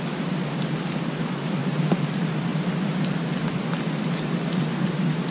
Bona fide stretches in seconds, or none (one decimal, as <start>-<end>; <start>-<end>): 0.0-5.3